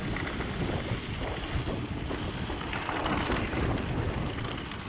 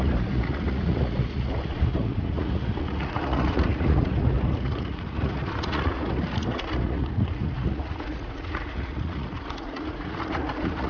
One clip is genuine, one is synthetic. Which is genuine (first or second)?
first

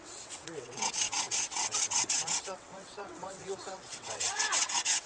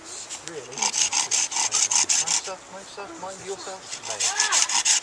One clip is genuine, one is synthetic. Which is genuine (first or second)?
second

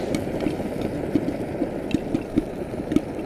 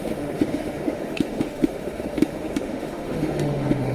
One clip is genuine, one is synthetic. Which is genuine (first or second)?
first